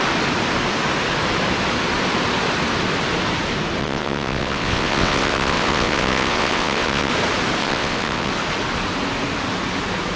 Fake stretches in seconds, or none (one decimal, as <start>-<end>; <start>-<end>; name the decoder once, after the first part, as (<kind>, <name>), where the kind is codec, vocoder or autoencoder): 3.8-7.1 (vocoder, WaveNeXt); 7.6-8.3